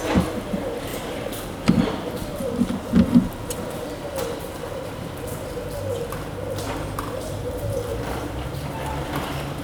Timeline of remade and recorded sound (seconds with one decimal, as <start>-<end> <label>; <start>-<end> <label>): 0.0-7.9 recorded; 7.9-9.2 remade; 9.2-9.6 recorded